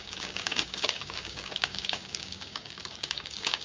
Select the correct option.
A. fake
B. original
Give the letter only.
A